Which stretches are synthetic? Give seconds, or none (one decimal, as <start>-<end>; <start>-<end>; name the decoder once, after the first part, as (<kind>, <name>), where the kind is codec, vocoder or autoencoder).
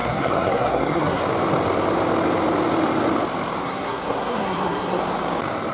0.0-1.2 (codec, SNAC); 3.6-5.0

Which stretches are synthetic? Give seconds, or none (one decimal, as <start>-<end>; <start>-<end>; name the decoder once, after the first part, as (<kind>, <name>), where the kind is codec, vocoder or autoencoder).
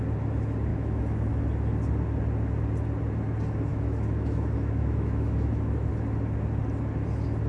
0.7-1.3 (autoencoder, DAC-VAE); 3.7-5.9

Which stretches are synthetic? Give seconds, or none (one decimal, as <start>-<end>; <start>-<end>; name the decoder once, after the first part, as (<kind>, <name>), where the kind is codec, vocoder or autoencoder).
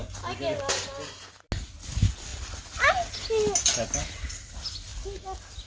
none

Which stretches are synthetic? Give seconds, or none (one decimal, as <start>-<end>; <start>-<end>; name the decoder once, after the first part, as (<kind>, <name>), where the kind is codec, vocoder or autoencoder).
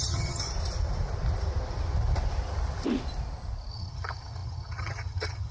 0.0-0.5 (vocoder, HiFi-GAN); 3.7-5.5